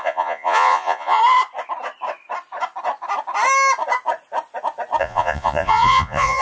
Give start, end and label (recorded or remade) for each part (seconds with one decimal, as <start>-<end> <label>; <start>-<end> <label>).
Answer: 0.0-1.2 remade; 1.2-5.0 recorded; 5.0-6.4 remade